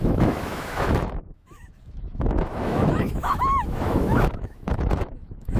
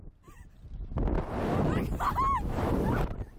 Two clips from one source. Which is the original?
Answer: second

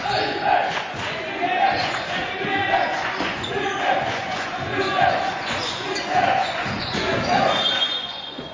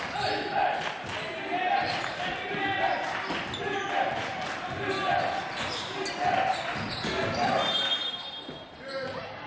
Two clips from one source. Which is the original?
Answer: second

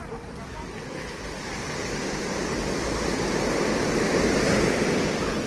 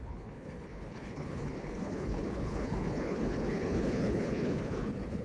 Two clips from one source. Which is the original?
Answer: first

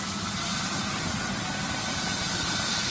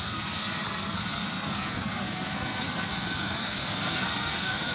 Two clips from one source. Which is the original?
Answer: first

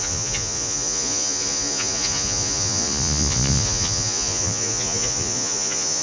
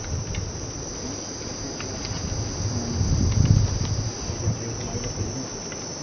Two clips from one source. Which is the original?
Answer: second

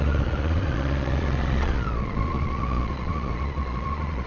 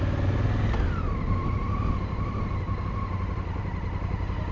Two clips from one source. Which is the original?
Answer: second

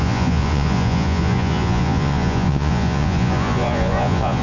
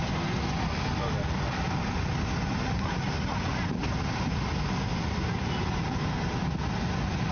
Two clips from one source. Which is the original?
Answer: second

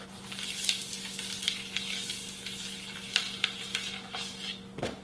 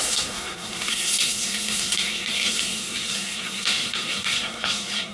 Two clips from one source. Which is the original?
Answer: first